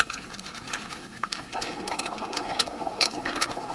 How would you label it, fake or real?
fake